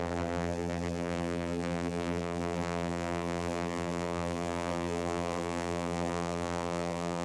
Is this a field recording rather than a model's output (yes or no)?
no